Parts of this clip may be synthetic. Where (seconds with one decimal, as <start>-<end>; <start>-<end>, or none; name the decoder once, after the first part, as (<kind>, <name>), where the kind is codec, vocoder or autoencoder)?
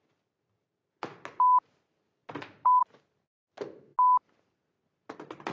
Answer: none